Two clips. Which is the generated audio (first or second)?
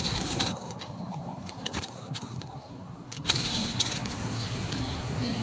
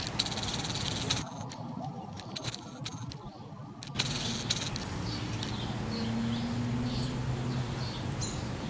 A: first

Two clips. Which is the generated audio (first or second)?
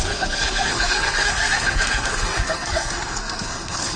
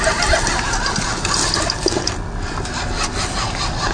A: first